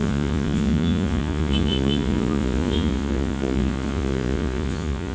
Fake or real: fake